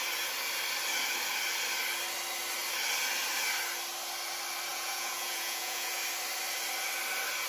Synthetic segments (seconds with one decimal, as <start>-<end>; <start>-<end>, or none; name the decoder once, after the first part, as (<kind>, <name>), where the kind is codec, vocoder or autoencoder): 4.7-6.0 (vocoder, Vocos)